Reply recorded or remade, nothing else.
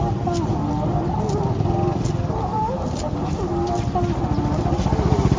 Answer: recorded